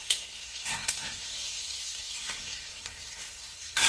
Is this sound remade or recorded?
remade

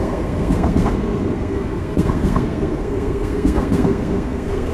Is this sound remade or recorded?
remade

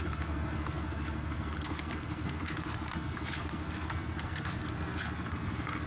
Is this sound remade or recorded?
remade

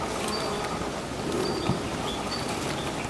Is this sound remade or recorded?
recorded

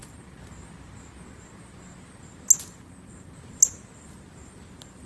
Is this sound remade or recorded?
recorded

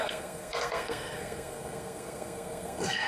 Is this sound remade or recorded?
remade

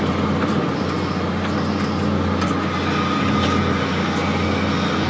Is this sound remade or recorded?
recorded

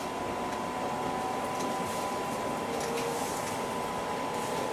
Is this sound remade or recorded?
recorded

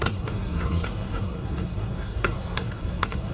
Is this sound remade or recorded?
remade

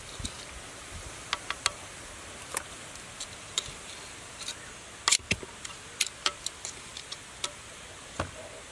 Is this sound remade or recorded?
recorded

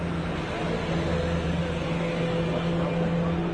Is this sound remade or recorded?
recorded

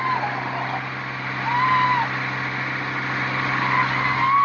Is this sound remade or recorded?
recorded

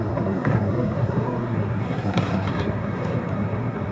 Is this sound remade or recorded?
remade